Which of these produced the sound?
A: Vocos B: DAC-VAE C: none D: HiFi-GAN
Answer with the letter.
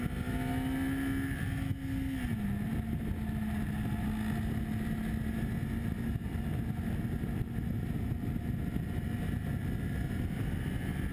C